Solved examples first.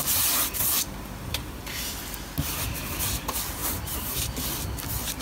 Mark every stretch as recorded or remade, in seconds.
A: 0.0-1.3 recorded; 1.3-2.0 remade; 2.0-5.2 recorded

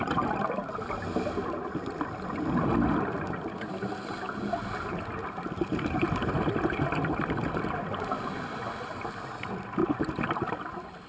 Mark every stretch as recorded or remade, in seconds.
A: 0.0-5.7 recorded; 5.7-6.3 remade; 6.3-11.1 recorded

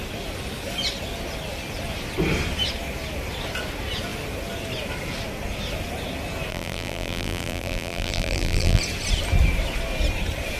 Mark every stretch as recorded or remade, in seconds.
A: 0.0-6.5 recorded; 6.5-8.8 remade; 8.8-10.6 recorded

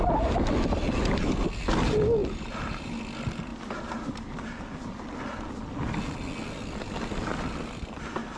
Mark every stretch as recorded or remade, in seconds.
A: 0.0-2.2 recorded; 2.2-3.0 remade; 3.0-3.5 recorded; 3.5-4.3 remade; 4.3-8.4 recorded

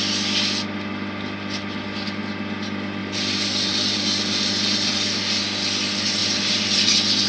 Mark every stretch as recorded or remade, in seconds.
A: 0.0-3.0 recorded; 3.0-5.4 remade; 5.4-6.2 recorded; 6.2-7.3 remade